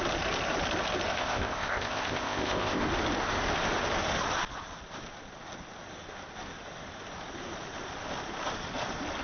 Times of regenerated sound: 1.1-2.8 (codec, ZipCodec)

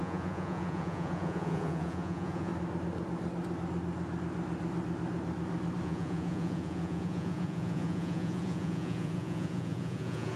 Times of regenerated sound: 0.0-2.5 (vocoder, Vocos); 5.8-10.4

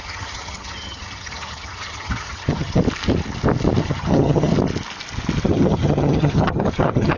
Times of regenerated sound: 0.0-2.8 (vocoder, HiFi-GAN); 3.8-4.5; 5.4-7.2